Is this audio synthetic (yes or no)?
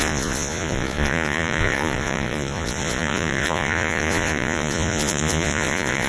yes